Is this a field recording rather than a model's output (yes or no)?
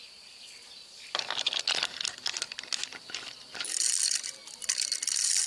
yes